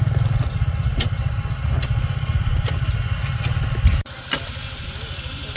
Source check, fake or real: real